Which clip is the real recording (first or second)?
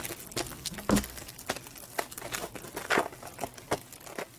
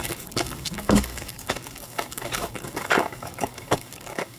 first